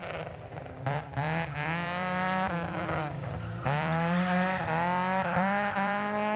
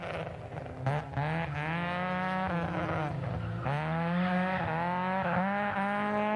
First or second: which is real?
second